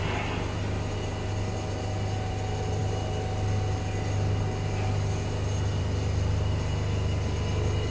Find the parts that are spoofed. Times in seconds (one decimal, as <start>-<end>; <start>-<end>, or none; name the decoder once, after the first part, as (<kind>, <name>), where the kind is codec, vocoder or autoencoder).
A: none